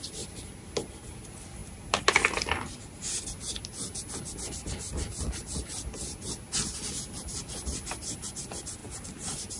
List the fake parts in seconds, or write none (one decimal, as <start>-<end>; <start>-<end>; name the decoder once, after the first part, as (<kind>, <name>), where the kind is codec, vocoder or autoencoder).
none